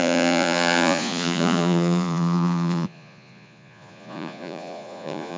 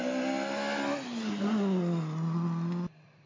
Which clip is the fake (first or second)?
first